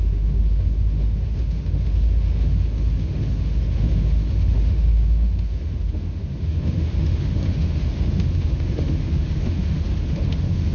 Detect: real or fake fake